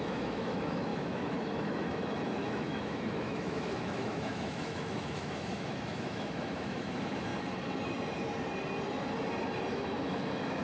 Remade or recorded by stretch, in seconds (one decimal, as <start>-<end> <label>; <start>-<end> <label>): 0.0-7.3 remade; 7.3-9.7 recorded; 9.7-10.6 remade